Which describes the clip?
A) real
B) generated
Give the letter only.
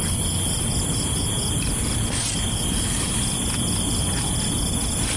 A